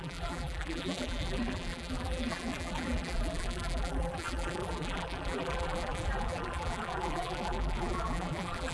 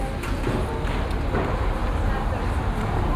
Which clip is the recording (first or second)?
second